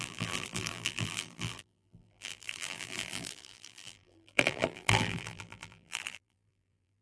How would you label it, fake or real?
fake